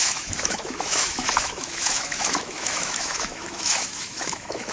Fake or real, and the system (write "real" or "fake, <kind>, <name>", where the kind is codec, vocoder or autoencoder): fake, autoencoder, DAC-VAE